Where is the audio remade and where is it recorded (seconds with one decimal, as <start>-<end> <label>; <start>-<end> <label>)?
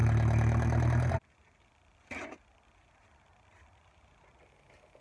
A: 0.0-5.0 recorded